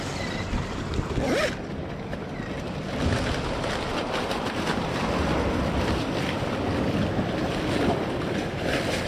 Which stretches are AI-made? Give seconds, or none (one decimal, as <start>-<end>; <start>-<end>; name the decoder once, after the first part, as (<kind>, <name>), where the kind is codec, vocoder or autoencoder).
3.9-8.5 (vocoder, BigVGAN v2)